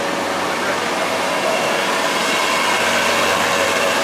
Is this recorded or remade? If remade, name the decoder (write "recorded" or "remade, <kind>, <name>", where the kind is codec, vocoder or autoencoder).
recorded